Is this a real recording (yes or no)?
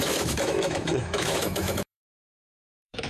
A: no